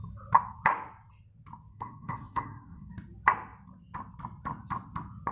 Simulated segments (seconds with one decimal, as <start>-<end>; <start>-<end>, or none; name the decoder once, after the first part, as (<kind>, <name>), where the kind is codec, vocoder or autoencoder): 1.7-2.9 (codec, SNAC)